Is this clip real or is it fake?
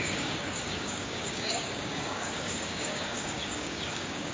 fake